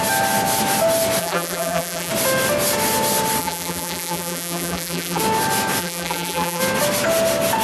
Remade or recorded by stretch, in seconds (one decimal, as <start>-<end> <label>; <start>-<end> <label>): 0.0-1.2 recorded; 1.2-2.1 remade; 2.1-3.4 recorded; 3.4-5.2 remade; 5.2-5.8 recorded; 5.8-6.6 remade; 6.6-7.6 recorded